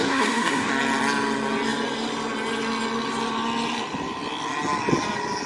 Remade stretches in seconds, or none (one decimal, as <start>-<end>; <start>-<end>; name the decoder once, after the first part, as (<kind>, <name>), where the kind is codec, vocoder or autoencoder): 0.0-0.7 (codec, SNAC)